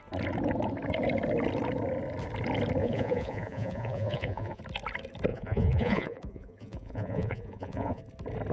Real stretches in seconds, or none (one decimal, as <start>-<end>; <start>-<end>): 0.0-2.8; 4.6-5.3; 8.0-8.5